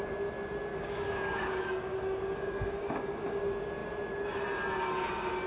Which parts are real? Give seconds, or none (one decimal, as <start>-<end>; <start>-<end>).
0.0-0.7; 3.4-5.5